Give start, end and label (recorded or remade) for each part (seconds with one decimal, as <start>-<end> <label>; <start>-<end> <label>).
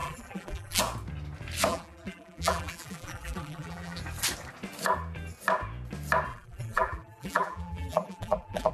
0.0-0.8 remade; 0.8-1.7 recorded; 1.7-4.0 remade; 4.0-6.3 recorded; 6.3-8.7 remade